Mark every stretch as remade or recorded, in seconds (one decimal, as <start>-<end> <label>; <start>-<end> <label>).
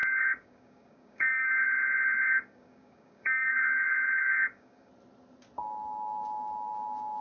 0.0-1.6 remade; 1.6-2.3 recorded; 2.3-4.9 remade; 4.9-7.2 recorded